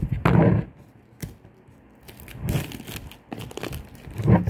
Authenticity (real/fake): real